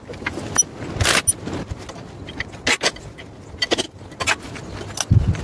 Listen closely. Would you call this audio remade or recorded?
recorded